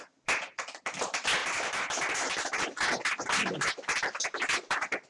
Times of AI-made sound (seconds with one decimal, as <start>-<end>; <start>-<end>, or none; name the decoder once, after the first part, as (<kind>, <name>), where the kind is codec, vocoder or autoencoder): 1.4-2.6 (vocoder, BigVGAN v2)